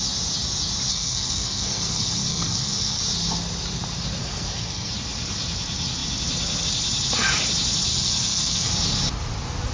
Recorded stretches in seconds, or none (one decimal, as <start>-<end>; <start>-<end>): 0.0-0.9; 3.0-4.2; 4.9-7.9; 8.7-9.7